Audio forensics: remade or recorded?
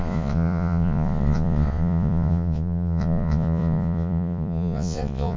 remade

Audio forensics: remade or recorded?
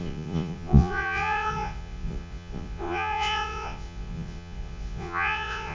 remade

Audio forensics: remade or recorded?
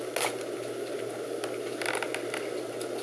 recorded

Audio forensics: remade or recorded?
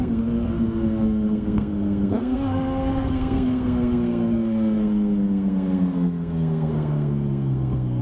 remade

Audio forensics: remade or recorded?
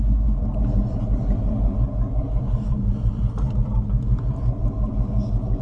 remade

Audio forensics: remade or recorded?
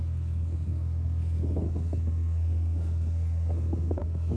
remade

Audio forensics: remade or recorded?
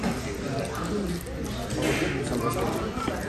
recorded